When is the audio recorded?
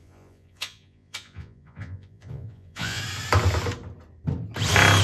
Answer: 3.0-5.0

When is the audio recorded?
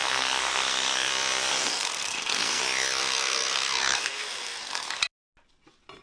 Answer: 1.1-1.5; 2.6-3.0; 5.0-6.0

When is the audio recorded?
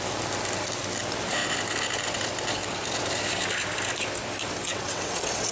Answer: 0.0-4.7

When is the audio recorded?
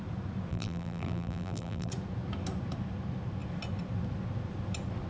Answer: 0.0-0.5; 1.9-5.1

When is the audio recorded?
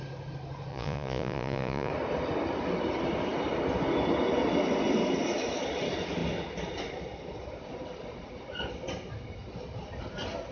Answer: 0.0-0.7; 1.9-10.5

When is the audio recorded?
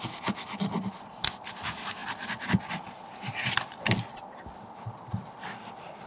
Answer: 0.0-6.1